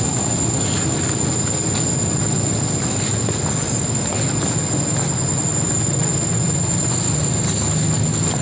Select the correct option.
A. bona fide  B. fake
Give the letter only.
A